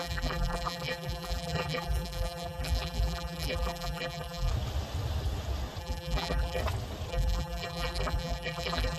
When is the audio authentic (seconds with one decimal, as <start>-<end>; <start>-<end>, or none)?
4.5-5.8; 6.6-7.1